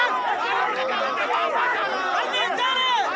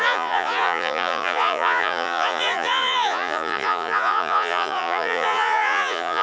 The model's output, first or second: second